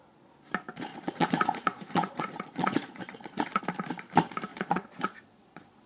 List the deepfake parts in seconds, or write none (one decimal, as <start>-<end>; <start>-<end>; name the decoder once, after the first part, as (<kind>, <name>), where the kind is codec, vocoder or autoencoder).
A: 0.9-3.6 (vocoder, Vocos); 4.5-5.9